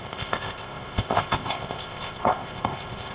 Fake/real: fake